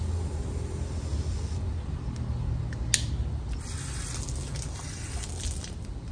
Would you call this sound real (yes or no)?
yes